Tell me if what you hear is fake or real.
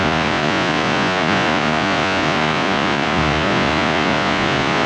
fake